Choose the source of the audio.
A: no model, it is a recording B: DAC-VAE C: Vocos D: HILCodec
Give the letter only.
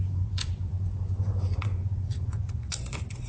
C